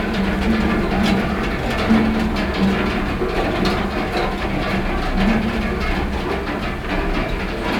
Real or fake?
real